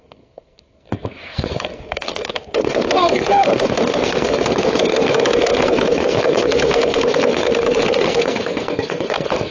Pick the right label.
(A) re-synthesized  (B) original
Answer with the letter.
A